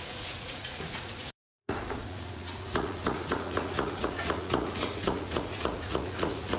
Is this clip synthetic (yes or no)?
yes